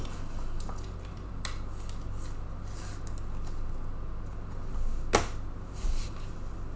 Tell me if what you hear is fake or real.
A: real